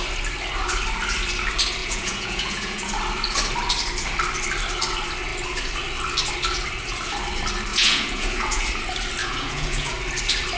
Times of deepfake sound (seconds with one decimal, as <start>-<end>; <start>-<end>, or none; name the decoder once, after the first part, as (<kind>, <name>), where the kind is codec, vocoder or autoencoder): 1.8-2.9 (vocoder, Vocos); 7.7-8.7; 9.2-9.9